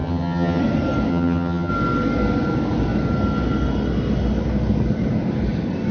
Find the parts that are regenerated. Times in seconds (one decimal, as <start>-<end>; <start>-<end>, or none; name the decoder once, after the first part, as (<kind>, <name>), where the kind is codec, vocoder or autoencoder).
0.0-0.6 (vocoder, HiFi-GAN); 1.1-1.7